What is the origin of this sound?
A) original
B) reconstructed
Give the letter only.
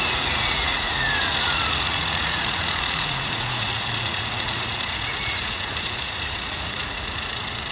B